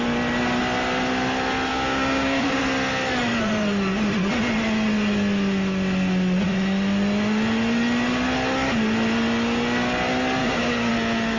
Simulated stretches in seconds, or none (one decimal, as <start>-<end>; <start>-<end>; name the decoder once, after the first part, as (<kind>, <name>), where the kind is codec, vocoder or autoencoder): 1.7-2.6 (codec, DAC); 10.4-10.9